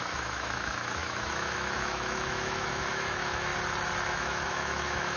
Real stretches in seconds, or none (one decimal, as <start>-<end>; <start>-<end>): 3.5-4.1